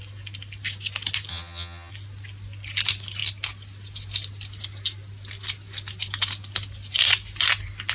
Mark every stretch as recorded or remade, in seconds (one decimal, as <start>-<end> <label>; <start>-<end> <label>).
0.0-1.3 recorded; 1.3-1.9 remade; 1.9-7.9 recorded